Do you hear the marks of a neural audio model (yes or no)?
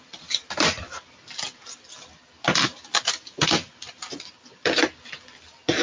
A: no